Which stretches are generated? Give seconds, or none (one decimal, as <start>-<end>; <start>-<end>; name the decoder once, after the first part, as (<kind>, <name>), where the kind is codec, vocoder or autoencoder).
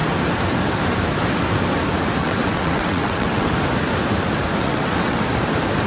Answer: 2.2-3.5 (vocoder, WaveNeXt); 4.6-5.2